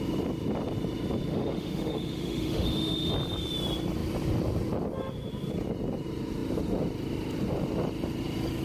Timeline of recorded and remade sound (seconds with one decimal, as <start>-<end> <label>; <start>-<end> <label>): 0.0-1.3 recorded; 1.3-3.1 remade; 3.1-8.6 recorded